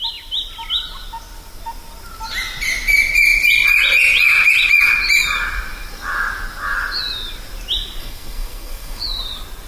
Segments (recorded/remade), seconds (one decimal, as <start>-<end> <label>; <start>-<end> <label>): 0.0-8.0 recorded; 8.0-9.0 remade; 9.0-9.7 recorded

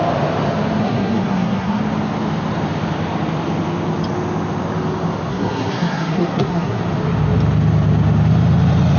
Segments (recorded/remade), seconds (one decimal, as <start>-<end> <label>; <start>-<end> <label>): 0.0-0.8 recorded; 0.8-1.8 remade; 1.8-5.3 recorded; 5.3-6.8 remade; 6.8-9.0 recorded

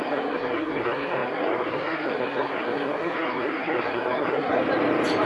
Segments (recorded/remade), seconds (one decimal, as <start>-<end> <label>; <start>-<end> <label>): 0.0-4.6 remade; 4.6-5.3 recorded

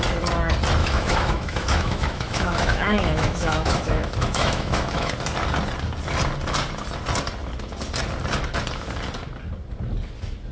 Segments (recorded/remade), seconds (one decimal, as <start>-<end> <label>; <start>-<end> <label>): 0.0-0.8 recorded; 0.8-5.1 remade; 5.1-10.5 recorded

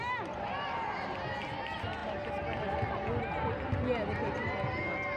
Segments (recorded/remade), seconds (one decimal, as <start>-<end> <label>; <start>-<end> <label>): 0.0-5.2 recorded

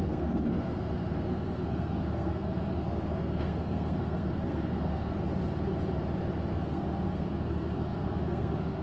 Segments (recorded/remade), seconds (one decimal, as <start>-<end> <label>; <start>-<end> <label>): 0.0-5.2 remade; 5.2-6.5 recorded; 6.5-8.8 remade

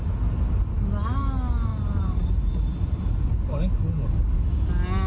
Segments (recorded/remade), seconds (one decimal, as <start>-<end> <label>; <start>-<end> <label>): 0.0-1.7 recorded; 1.7-2.6 remade; 2.6-5.1 recorded

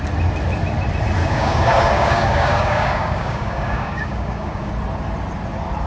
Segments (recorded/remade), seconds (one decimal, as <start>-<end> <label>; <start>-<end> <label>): 0.0-1.2 recorded; 1.2-4.7 remade; 4.7-5.9 recorded